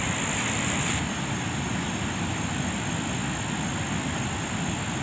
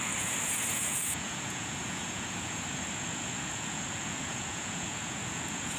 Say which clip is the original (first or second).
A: first